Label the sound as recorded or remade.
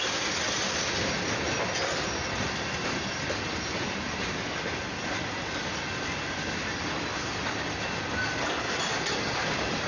recorded